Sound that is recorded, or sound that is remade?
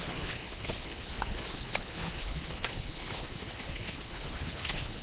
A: remade